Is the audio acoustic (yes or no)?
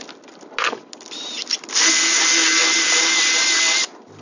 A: yes